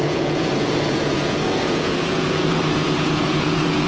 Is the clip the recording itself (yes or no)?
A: no